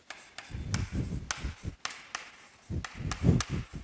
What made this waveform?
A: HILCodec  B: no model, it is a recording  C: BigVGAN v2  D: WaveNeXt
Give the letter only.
B